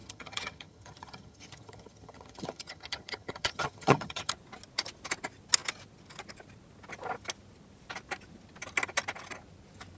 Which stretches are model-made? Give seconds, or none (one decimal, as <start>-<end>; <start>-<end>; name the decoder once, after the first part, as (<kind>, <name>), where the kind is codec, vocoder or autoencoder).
0.0-4.3 (vocoder, HiFi-GAN)